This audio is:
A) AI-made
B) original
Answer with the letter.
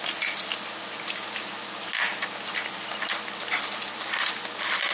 B